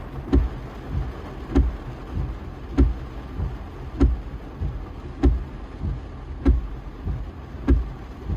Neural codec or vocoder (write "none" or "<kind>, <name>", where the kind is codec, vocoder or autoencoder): none